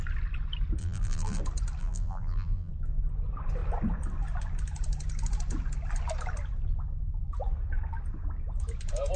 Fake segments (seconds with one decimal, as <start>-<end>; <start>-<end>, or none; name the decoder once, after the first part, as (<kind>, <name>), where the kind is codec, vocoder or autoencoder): 0.8-1.4 (vocoder, BigVGAN v2); 1.8-2.7